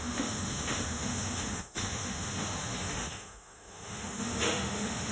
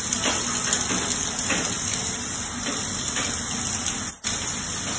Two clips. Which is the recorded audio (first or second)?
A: second